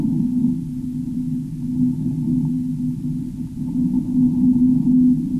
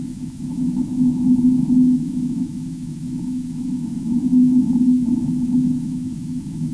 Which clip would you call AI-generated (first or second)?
second